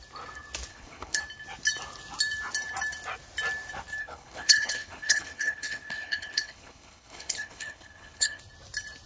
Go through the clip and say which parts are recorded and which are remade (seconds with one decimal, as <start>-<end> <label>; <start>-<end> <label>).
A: 0.0-0.7 recorded; 0.7-1.2 remade; 1.2-4.0 recorded; 4.0-8.4 remade; 8.4-9.1 recorded